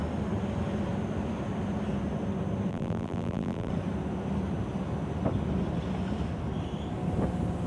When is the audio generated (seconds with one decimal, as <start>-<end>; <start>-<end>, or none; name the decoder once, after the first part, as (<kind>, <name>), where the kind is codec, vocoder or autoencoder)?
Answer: 2.7-3.7 (vocoder, BigVGAN v2)